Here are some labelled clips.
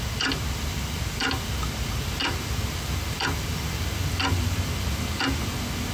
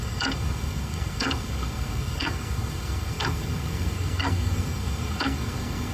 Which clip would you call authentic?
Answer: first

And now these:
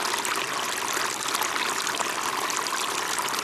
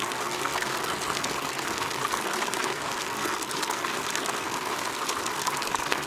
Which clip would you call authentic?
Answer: first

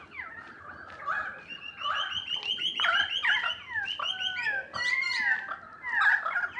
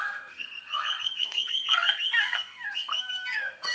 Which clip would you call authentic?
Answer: first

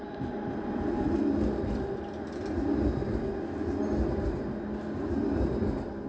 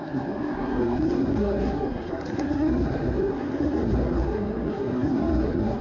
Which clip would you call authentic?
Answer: first